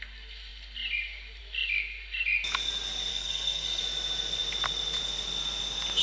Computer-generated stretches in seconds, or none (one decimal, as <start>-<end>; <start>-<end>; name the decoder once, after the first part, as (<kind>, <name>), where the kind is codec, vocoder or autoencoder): 3.1-3.8 (codec, SNAC)